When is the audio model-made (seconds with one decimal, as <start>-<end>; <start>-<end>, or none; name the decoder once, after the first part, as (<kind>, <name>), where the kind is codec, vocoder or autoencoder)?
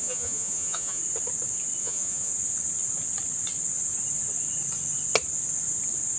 0.0-1.0 (vocoder, Vocos); 1.8-2.3